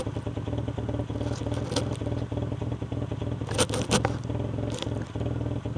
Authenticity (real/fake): real